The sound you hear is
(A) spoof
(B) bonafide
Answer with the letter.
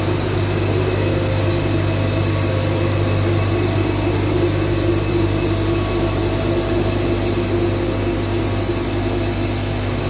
B